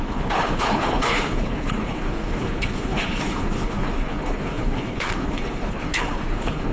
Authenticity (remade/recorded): remade